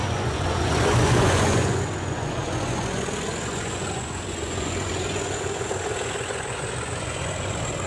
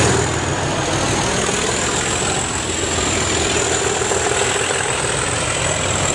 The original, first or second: second